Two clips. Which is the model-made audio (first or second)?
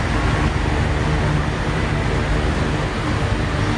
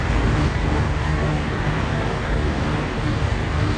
second